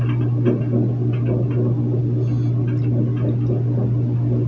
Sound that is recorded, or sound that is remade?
recorded